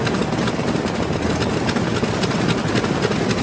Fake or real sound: real